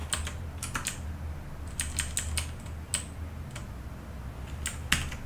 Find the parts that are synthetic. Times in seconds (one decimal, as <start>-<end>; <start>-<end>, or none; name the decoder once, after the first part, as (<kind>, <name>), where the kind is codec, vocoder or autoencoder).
none